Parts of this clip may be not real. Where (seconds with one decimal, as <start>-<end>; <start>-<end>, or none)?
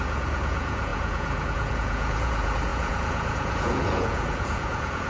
0.0-5.1